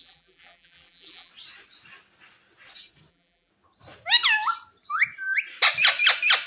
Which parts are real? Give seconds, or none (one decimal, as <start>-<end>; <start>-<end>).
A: 1.3-3.1; 3.5-6.5